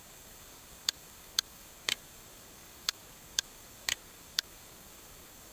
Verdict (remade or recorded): remade